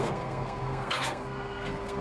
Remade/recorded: remade